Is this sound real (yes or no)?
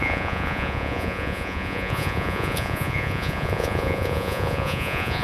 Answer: no